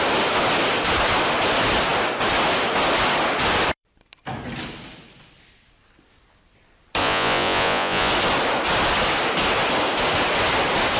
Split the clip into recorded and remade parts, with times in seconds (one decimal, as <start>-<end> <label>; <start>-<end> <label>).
0.0-7.0 recorded; 7.0-8.1 remade; 8.1-11.0 recorded